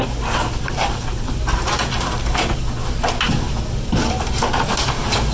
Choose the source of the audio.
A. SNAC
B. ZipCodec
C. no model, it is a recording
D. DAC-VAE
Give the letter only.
C